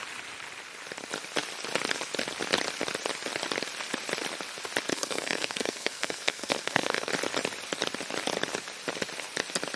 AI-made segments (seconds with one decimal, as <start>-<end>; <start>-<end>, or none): 4.9-7.1